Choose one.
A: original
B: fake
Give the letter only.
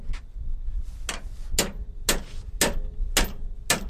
A